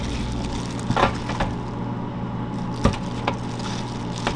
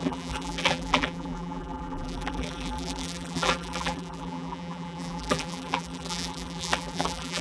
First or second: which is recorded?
first